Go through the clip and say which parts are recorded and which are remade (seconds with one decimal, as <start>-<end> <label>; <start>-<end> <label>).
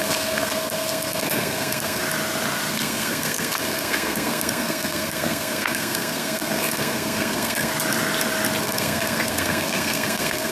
0.0-2.0 remade; 2.0-2.7 recorded; 2.7-7.7 remade; 7.7-8.6 recorded; 8.6-10.5 remade